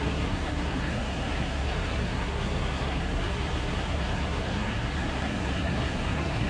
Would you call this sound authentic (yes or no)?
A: no